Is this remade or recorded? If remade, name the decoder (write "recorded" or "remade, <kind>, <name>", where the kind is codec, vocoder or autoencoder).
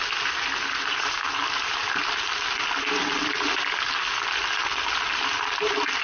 recorded